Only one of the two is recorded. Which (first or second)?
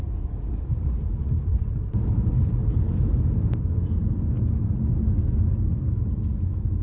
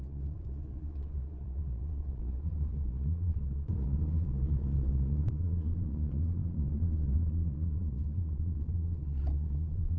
first